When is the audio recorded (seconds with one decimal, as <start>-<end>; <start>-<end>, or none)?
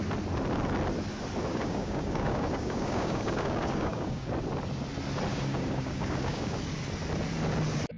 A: 0.0-1.5; 4.3-5.3; 6.6-8.0